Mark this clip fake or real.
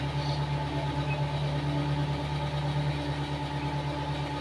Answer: real